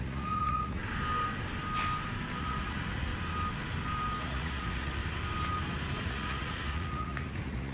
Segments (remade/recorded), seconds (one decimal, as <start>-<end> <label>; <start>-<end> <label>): 0.0-0.8 remade; 0.8-2.4 recorded; 2.4-3.1 remade; 3.1-4.2 recorded; 4.2-5.0 remade; 5.0-6.0 recorded; 6.0-7.7 remade